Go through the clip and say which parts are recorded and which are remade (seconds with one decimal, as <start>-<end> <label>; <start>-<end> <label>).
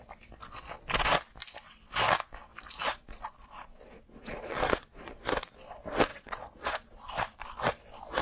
0.0-2.8 recorded; 2.8-5.2 remade; 5.2-6.1 recorded; 6.1-7.1 remade; 7.1-8.2 recorded